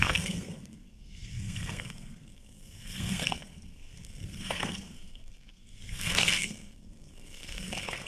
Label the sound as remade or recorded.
remade